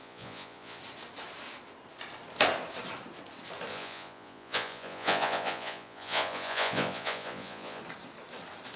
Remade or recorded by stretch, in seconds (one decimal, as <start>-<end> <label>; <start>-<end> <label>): 0.0-0.8 remade; 0.8-3.7 recorded; 3.7-7.8 remade; 7.8-8.8 recorded